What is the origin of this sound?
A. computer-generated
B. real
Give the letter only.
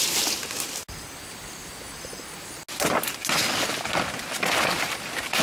B